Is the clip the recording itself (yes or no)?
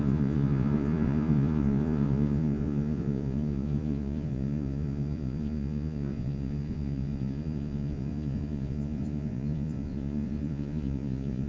no